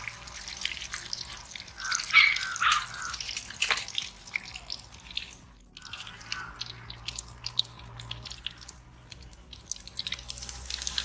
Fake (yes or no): no